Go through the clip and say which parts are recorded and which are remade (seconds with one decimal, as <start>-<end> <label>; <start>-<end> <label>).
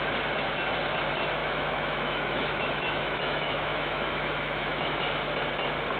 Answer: 0.0-1.4 recorded; 1.4-5.0 remade; 5.0-6.0 recorded